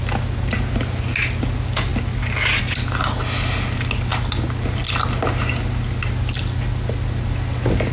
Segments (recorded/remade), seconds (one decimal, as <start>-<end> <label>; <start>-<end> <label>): 0.0-7.9 recorded